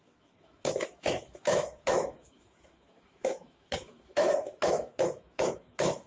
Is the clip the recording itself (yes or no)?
no